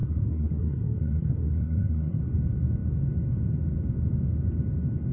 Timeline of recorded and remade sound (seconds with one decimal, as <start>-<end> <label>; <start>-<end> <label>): 0.0-2.2 remade; 2.2-5.1 recorded